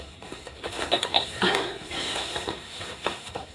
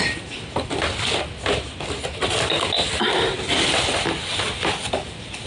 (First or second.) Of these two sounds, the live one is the second